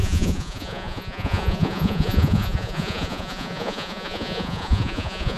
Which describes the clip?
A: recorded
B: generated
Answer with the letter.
B